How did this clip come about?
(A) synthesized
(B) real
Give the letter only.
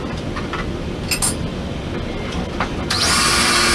B